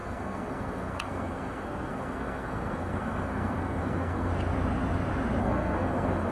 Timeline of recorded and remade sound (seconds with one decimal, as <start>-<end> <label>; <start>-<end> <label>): 0.0-4.3 remade; 4.3-5.4 recorded; 5.4-6.3 remade

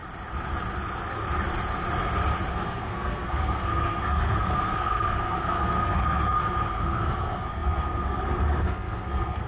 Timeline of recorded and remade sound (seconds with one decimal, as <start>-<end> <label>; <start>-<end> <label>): 0.0-2.5 recorded; 2.5-9.5 remade

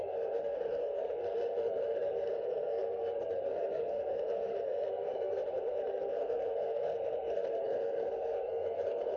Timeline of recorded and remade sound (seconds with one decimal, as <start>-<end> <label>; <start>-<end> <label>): 0.0-9.2 remade

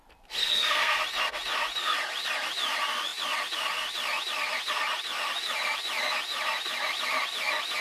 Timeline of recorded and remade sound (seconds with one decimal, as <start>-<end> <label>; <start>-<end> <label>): 0.0-0.4 recorded; 0.4-1.0 remade; 1.0-7.8 recorded

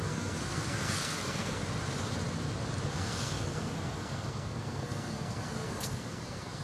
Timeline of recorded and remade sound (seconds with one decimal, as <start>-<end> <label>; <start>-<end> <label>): 0.0-1.6 remade; 1.6-2.9 recorded; 2.9-6.6 remade